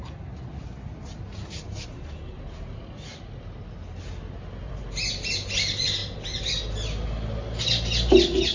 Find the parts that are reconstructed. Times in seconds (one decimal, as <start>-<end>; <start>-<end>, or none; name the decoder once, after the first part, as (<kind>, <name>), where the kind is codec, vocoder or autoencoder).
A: none